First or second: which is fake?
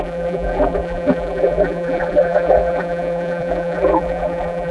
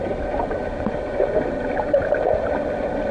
first